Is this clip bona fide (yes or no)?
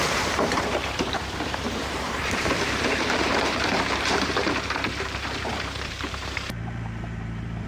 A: no